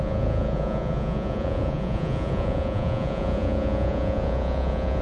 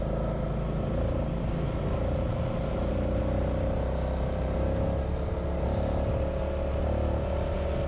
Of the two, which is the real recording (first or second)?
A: second